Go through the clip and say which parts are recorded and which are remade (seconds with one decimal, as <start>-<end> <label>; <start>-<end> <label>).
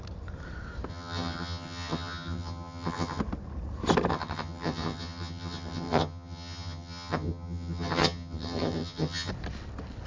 0.0-0.9 recorded; 0.9-3.2 remade; 3.2-4.1 recorded; 4.1-9.3 remade; 9.3-10.1 recorded